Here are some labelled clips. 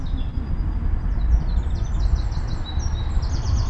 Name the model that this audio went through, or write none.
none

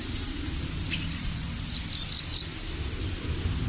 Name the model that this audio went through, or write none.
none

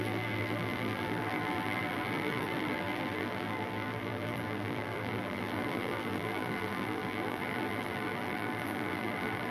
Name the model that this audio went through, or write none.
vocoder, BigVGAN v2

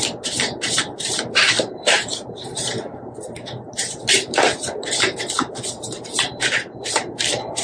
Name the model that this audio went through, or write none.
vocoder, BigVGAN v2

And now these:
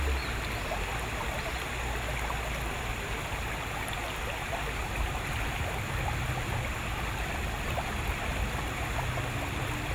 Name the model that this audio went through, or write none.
none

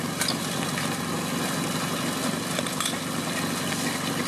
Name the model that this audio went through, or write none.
none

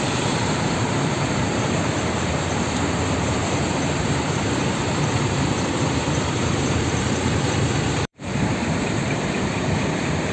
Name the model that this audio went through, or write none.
vocoder, BigVGAN v2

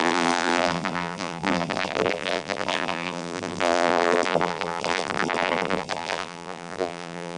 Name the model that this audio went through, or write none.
vocoder, BigVGAN v2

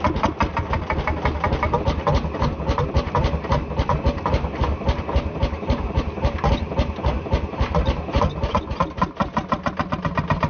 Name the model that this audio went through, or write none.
none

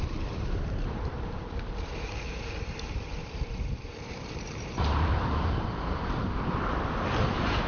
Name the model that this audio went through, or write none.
vocoder, BigVGAN v2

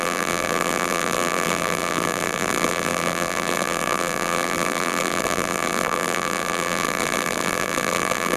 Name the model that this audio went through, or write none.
vocoder, BigVGAN v2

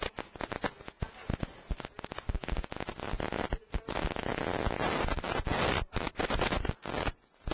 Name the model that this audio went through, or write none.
none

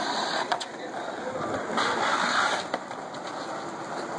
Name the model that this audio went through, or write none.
none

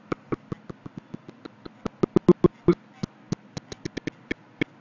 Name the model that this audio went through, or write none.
none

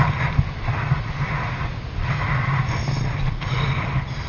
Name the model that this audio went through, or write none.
none